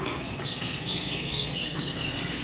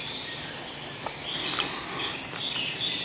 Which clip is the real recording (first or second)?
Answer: second